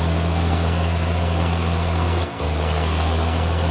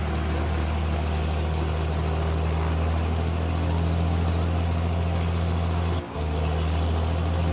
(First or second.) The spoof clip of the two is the first